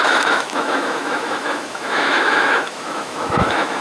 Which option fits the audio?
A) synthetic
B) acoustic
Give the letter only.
A